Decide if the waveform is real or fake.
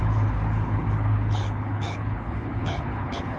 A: fake